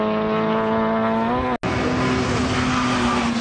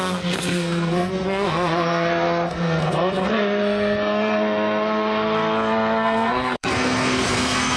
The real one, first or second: first